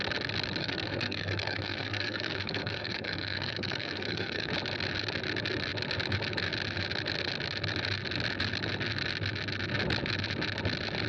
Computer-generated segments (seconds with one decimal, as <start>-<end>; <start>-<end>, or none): 0.6-4.5